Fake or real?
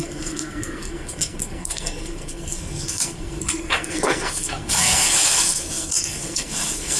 fake